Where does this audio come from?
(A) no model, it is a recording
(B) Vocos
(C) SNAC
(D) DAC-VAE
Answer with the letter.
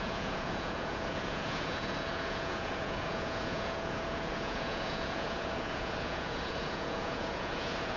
B